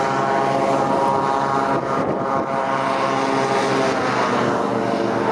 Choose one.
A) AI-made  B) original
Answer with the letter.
B